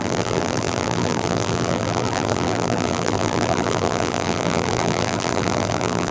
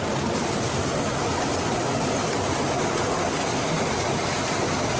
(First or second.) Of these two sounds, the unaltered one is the second